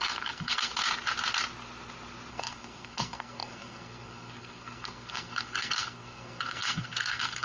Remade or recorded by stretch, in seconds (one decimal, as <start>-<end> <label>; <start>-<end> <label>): 0.0-0.7 remade; 0.7-2.3 recorded; 2.3-7.4 remade